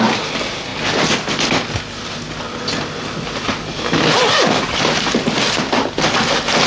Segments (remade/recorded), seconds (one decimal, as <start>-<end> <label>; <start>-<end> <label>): 0.0-6.7 recorded